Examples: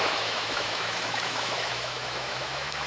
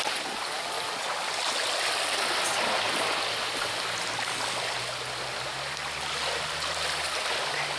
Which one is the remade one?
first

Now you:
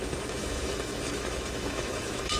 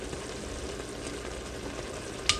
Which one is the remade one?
first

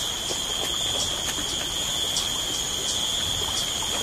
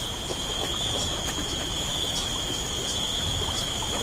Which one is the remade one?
second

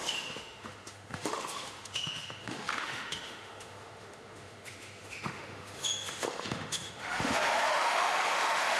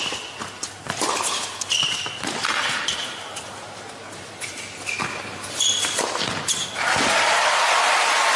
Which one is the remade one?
first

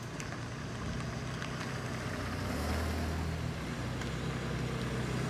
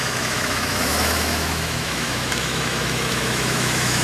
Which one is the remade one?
second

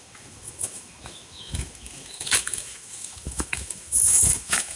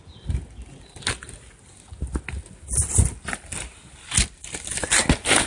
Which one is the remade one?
first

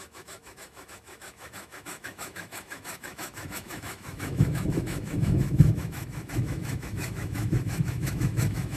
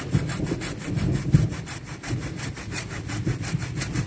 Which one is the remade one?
first